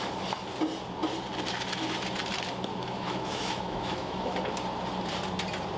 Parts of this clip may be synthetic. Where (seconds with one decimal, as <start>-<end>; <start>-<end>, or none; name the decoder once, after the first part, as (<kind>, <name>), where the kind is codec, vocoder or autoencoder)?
2.7-4.4 (autoencoder, DAC-VAE)